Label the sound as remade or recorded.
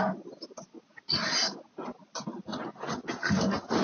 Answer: recorded